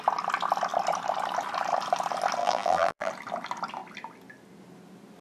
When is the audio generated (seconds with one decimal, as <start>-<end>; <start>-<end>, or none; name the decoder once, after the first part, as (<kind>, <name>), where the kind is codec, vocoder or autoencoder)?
2.4-3.1 (vocoder, BigVGAN v2)